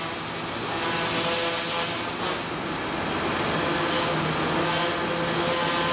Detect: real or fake real